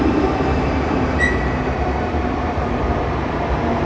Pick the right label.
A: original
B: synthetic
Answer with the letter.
B